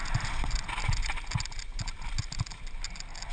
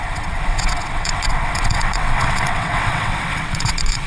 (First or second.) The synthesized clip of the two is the second